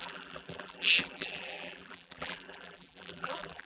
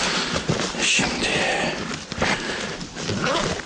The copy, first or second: first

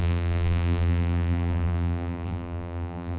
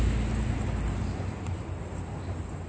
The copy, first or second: first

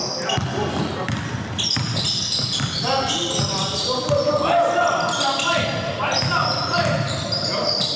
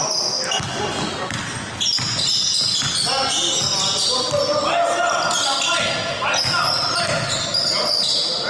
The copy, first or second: first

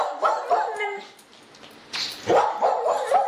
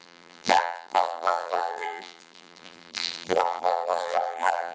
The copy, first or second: second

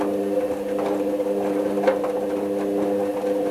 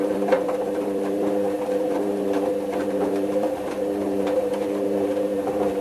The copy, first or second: second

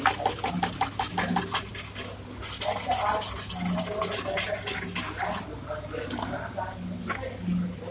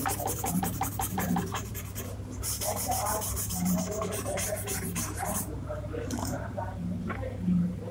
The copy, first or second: second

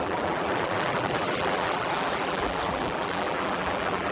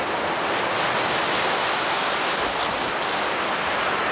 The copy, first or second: first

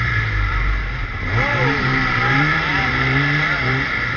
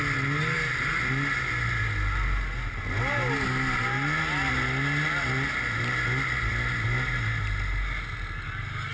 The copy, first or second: first